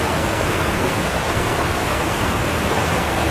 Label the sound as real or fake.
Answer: fake